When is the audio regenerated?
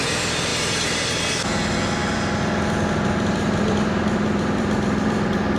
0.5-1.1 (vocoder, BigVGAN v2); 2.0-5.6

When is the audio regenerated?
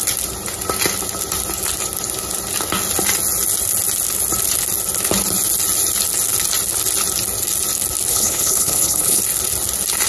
8.1-9.2 (codec, HILCodec)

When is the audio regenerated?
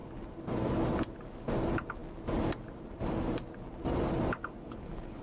4.6-5.2 (codec, HILCodec)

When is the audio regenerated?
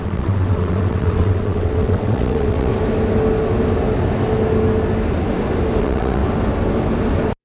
0.0-2.7 (vocoder, WaveNeXt); 5.8-6.2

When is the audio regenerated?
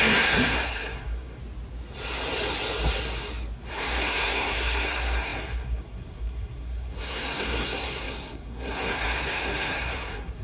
0.0-1.4 (codec, SNAC); 3.7-10.4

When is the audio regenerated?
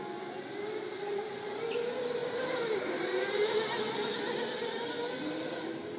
none